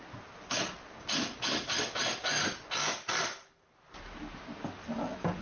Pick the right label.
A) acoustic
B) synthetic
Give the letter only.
A